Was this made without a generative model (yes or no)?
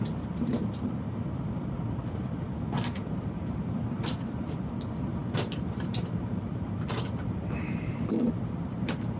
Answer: no